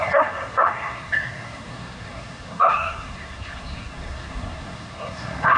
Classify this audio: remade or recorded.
remade